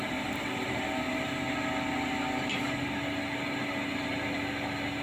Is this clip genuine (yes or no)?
yes